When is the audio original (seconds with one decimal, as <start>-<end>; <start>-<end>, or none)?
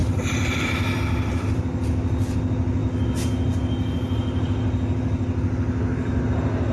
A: 1.6-6.7